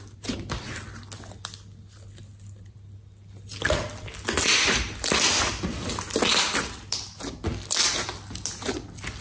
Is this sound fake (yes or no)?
no